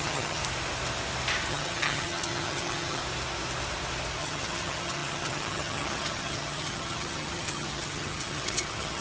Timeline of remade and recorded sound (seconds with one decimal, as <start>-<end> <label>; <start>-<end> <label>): 0.0-0.4 remade; 0.4-1.5 recorded; 1.5-3.0 remade; 3.0-4.2 recorded; 4.2-9.0 remade